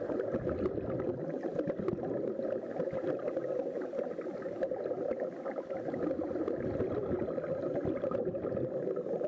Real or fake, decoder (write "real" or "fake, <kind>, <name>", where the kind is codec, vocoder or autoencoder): real